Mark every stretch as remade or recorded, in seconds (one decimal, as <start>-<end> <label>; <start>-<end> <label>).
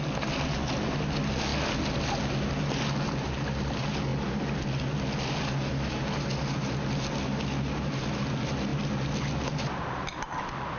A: 0.0-10.8 recorded